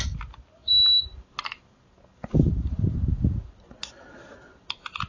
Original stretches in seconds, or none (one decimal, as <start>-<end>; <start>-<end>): 0.0-5.1